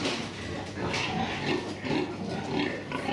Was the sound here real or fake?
real